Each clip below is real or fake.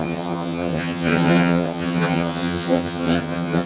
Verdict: fake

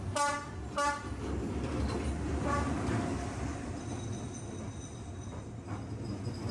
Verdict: real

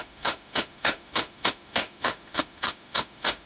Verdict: fake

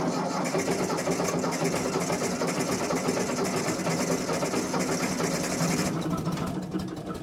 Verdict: real